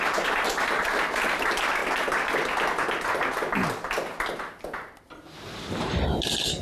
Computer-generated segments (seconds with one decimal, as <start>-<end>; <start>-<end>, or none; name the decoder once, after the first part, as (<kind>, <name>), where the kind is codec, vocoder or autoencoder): 0.0-1.8 (vocoder, BigVGAN v2); 5.8-6.6